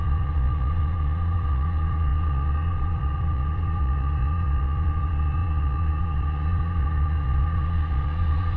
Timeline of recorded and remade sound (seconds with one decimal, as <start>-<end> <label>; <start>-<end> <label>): 0.0-8.6 remade